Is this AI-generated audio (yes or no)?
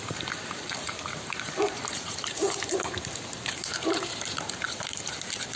yes